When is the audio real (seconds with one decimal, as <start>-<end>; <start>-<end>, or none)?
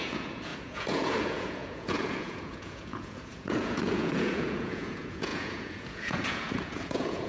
none